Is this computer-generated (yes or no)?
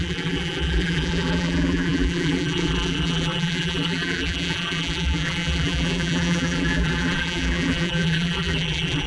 yes